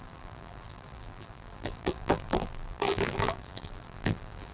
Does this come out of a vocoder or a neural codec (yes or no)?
yes